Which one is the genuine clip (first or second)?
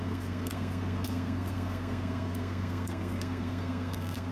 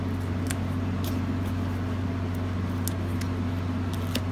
second